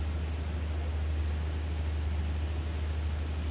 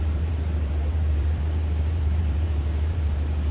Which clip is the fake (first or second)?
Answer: second